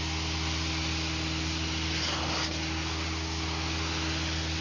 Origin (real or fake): real